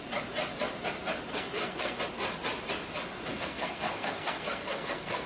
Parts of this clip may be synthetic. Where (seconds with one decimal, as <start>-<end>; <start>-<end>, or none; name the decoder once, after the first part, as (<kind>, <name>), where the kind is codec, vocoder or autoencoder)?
1.3-2.0 (codec, SNAC); 3.3-5.3